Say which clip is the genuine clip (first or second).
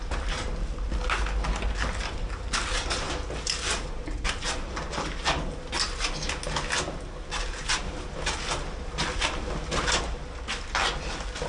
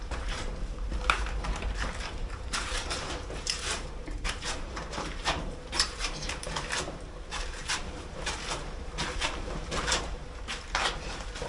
first